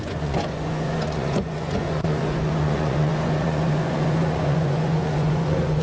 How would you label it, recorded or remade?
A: remade